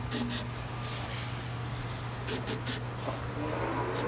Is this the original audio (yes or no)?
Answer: yes